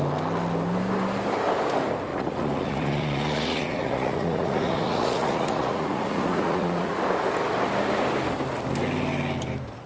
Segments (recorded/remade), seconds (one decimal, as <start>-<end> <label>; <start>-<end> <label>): 0.0-2.1 recorded; 2.1-6.9 remade; 6.9-9.9 recorded